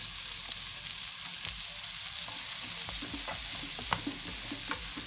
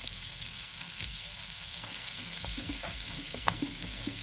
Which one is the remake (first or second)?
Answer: second